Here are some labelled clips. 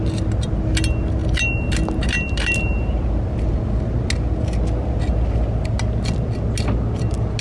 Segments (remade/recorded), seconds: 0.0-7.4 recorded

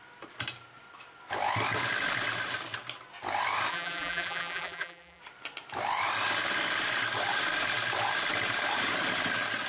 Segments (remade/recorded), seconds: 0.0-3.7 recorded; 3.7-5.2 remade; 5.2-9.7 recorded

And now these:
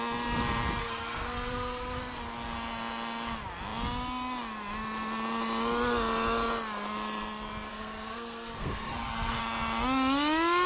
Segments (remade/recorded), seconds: 0.0-0.8 recorded; 0.8-2.0 remade; 2.0-7.7 recorded; 7.7-9.4 remade; 9.4-10.7 recorded

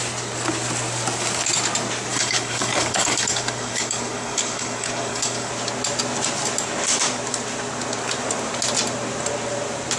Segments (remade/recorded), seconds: 0.0-2.1 recorded; 2.1-5.5 remade; 5.5-10.0 recorded

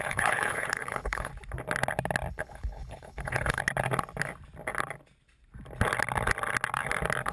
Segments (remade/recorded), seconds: 0.0-1.3 remade; 1.3-2.3 recorded; 2.3-3.6 remade; 3.6-7.3 recorded

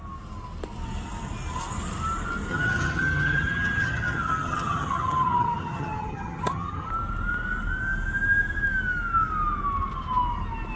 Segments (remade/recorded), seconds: 0.0-2.5 recorded; 2.5-6.9 remade; 6.9-10.8 recorded

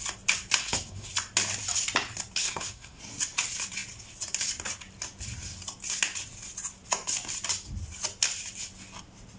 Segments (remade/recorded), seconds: 0.0-0.6 recorded; 0.6-1.1 remade; 1.1-2.4 recorded; 2.4-3.0 remade; 3.0-9.4 recorded

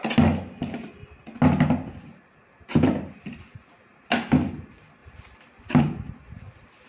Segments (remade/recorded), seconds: 0.0-6.9 recorded